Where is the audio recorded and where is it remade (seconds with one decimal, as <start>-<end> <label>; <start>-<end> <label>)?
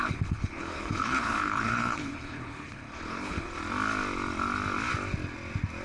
0.0-3.5 remade; 3.5-5.8 recorded